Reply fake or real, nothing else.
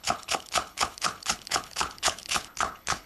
fake